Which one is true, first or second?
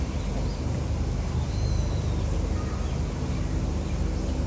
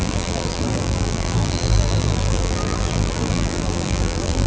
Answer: first